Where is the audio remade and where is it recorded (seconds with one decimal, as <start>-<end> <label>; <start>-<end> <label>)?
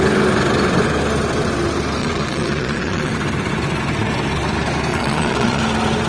0.0-2.0 recorded; 2.0-3.1 remade; 3.1-4.9 recorded; 4.9-5.6 remade; 5.6-6.1 recorded